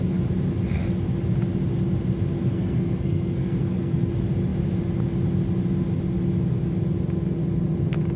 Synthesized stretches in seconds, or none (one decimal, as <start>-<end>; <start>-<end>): 2.4-4.1